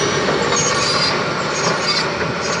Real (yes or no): yes